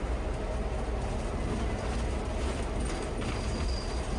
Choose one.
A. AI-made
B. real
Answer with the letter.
B